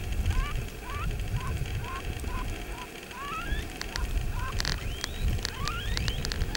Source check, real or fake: real